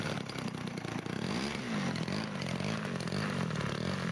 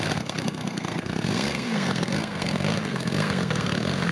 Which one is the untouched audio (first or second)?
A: first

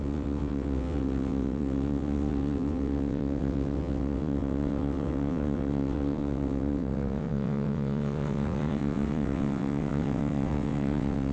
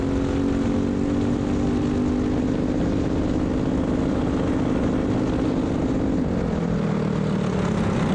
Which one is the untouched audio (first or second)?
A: second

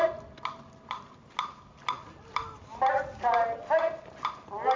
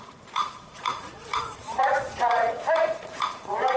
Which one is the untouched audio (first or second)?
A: first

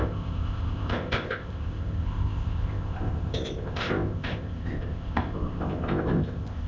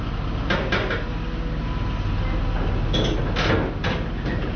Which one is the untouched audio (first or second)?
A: second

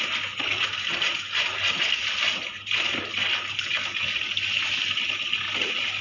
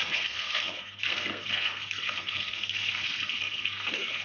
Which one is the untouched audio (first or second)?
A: first